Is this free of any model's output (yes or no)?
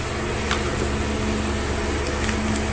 yes